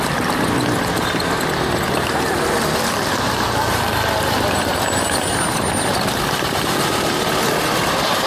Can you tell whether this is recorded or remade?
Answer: recorded